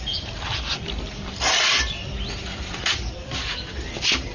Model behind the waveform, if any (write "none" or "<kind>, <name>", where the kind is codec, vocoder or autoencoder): none